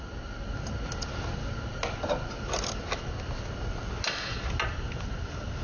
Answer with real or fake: real